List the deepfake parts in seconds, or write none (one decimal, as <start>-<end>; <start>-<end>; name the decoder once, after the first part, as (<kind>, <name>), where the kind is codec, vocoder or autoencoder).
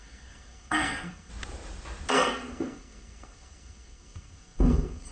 0.0-1.3 (codec, SNAC); 2.1-5.1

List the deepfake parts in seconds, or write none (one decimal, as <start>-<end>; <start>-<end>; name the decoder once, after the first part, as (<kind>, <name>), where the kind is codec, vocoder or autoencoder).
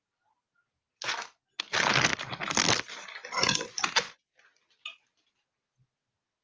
none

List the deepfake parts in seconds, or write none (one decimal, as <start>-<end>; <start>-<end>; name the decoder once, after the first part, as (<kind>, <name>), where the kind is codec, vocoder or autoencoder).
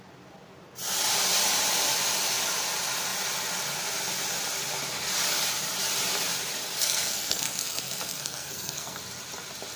6.8-9.0 (codec, SNAC)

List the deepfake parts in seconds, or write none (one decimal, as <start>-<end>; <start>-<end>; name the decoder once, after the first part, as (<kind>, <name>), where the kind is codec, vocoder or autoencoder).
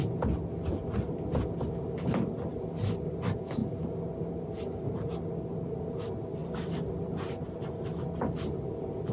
none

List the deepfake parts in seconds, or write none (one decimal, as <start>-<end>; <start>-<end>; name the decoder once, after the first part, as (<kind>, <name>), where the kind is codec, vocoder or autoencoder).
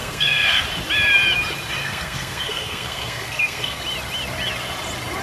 0.0-0.6 (codec, SNAC); 1.8-3.8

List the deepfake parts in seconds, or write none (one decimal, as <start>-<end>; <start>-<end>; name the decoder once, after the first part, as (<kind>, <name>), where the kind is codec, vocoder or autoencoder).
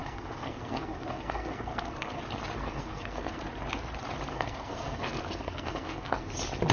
0.0-2.2 (codec, SNAC); 2.6-3.4; 4.3-6.3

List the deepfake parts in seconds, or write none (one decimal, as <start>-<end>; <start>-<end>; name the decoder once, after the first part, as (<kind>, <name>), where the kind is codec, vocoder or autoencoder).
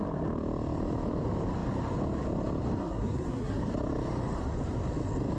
2.8-3.6 (codec, SNAC)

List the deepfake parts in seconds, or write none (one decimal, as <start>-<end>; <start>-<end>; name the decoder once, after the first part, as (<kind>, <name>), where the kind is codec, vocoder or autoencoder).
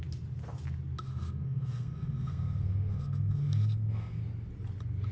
1.1-4.2 (codec, SNAC)